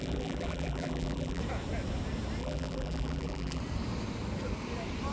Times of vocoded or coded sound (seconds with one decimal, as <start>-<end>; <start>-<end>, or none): 0.0-1.4; 2.4-3.6